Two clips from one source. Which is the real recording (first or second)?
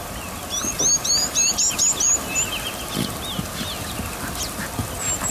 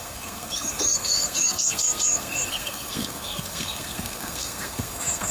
first